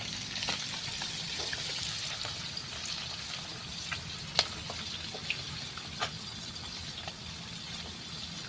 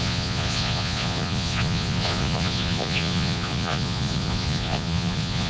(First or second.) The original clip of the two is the first